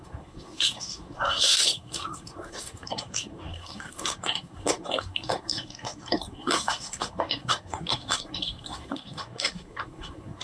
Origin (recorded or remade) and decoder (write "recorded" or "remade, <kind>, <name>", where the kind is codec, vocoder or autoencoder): remade, codec, SNAC